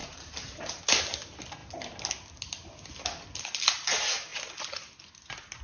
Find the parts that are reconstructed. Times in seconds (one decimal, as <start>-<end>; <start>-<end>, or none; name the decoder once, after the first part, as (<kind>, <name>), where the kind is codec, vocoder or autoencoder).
0.0-0.8 (vocoder, BigVGAN v2)